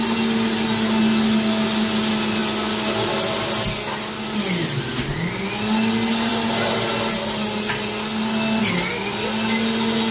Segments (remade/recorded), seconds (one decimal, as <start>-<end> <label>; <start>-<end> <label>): 0.0-10.1 recorded